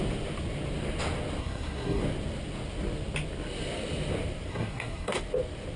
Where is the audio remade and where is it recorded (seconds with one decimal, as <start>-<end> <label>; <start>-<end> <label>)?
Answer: 0.0-1.4 recorded; 1.4-2.0 remade; 2.0-4.5 recorded; 4.5-5.2 remade; 5.2-5.8 recorded